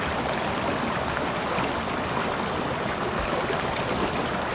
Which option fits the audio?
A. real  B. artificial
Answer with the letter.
A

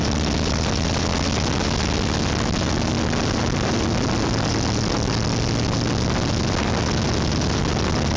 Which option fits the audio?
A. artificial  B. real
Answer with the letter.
B